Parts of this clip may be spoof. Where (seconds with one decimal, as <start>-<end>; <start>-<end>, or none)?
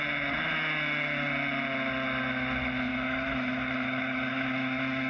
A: 2.9-5.1